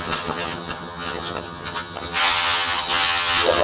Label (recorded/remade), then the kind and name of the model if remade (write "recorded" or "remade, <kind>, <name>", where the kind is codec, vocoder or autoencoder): remade, vocoder, HiFi-GAN